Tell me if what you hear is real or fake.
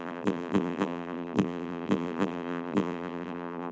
fake